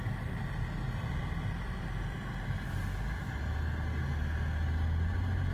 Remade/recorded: recorded